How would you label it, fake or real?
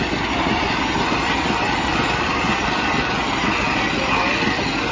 real